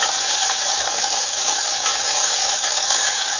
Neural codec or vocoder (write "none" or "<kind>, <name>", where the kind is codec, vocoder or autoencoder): codec, DAC